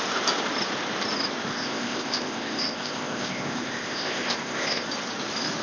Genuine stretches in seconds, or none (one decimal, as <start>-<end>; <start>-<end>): 0.0-1.5; 4.9-5.6